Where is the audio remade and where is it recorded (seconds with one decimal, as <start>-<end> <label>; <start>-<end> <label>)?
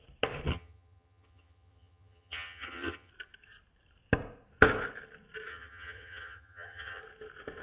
0.0-0.5 recorded; 0.5-3.1 remade; 3.1-5.5 recorded; 5.5-7.0 remade; 7.0-7.6 recorded